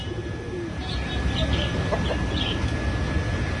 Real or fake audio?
real